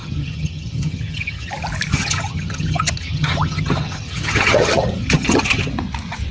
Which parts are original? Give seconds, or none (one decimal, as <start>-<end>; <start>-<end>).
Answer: 1.5-1.9; 5.7-6.3